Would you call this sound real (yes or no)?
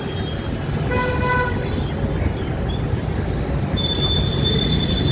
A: yes